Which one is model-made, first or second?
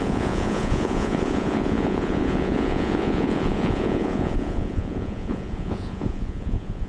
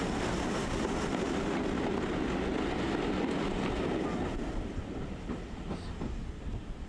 first